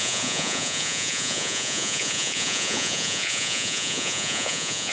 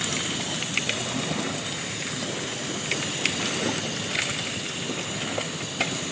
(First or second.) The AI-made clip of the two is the first